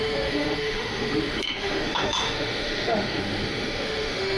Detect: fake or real fake